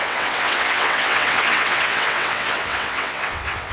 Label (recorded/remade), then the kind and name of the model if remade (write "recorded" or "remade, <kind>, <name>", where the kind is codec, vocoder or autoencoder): remade, vocoder, WaveNeXt